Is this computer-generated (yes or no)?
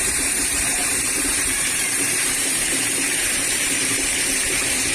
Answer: yes